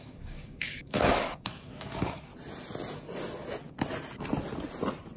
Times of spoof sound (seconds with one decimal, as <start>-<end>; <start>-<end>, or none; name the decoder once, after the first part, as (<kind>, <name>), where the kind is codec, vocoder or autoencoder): 0.0-2.3 (codec, DAC)